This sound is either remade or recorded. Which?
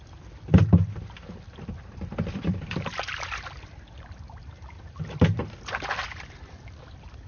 remade